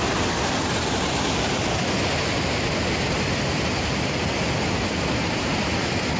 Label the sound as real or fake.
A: real